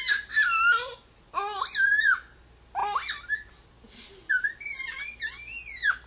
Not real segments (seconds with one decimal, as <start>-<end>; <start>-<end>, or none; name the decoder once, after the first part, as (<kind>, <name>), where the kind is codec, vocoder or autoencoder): none